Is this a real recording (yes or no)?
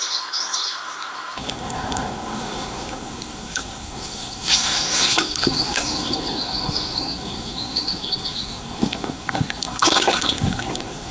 no